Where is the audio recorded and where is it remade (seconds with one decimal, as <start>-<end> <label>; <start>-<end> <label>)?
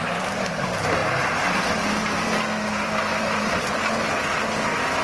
0.0-3.1 recorded; 3.1-4.0 remade; 4.0-5.0 recorded